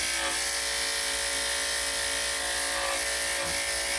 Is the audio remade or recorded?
recorded